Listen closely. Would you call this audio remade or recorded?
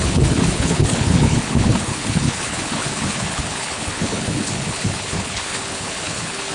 remade